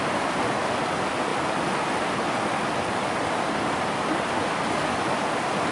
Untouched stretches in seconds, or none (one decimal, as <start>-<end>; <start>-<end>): 0.0-5.7